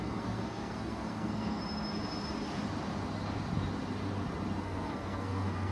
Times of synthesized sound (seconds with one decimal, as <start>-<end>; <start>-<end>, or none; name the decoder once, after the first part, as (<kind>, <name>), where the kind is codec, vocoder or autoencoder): 0.0-1.6 (codec, SNAC); 4.6-5.7